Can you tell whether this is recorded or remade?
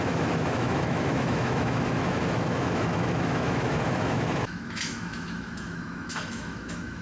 remade